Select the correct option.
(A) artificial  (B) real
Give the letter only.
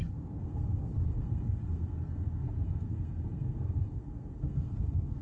A